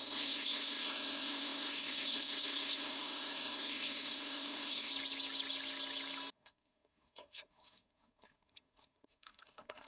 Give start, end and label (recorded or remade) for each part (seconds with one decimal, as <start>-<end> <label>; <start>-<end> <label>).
0.0-4.9 remade; 4.9-6.3 recorded; 6.3-9.9 remade